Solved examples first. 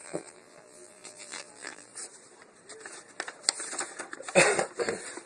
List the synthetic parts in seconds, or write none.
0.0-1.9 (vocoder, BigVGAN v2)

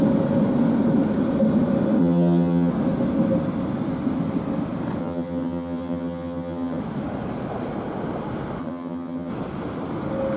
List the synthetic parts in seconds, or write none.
2.0-2.7 (vocoder, HiFi-GAN); 5.0-6.8; 8.6-9.3

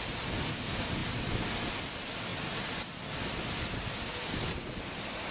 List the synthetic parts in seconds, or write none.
none